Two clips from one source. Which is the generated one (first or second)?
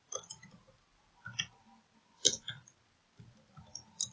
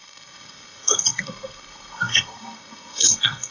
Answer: second